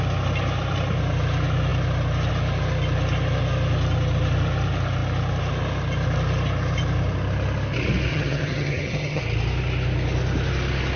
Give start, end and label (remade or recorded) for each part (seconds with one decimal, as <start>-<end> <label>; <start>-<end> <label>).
0.0-8.1 recorded; 8.1-9.2 remade; 9.2-11.0 recorded